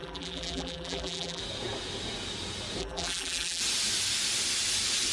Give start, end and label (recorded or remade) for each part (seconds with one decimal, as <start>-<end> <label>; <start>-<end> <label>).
0.0-1.4 remade; 1.4-2.8 recorded; 2.8-3.6 remade; 3.6-5.1 recorded